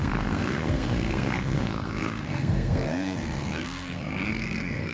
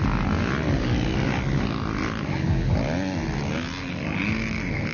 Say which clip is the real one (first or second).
second